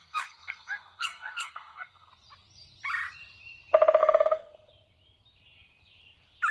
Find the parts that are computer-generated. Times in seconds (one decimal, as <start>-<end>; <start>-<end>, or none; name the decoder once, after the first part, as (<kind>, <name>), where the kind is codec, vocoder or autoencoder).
0.0-2.1 (codec, SNAC); 4.0-4.7